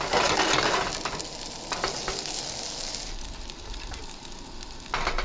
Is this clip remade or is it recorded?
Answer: recorded